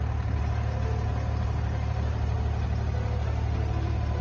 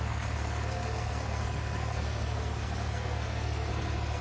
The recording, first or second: first